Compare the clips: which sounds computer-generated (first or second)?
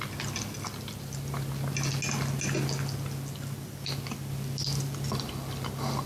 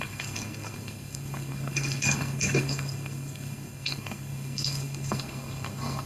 second